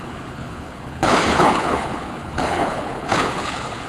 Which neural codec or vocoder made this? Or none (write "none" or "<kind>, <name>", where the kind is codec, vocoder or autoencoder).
codec, HILCodec